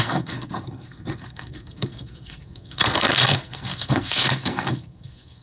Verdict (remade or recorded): remade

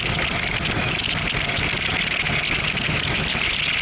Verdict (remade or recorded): recorded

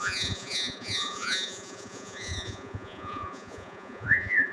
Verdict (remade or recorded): remade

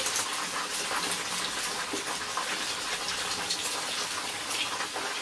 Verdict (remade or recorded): recorded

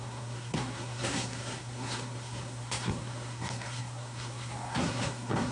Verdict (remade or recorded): remade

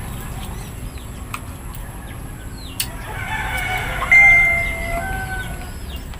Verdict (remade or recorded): recorded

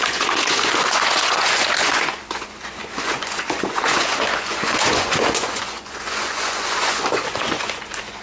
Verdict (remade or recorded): remade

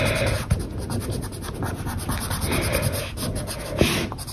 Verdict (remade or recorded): recorded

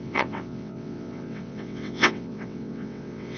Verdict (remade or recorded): remade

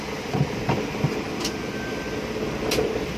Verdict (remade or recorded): recorded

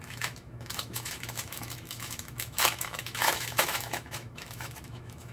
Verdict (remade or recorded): remade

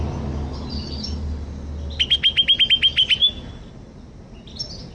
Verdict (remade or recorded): recorded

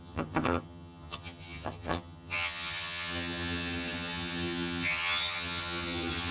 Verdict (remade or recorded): remade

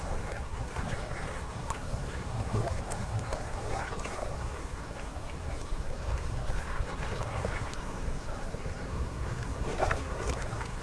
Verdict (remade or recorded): remade